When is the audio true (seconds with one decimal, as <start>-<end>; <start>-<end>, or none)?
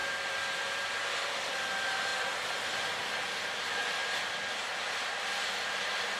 2.1-2.7